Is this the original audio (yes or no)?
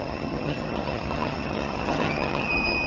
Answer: no